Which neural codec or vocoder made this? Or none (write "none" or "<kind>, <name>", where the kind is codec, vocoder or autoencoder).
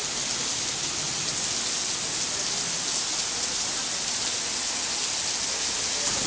none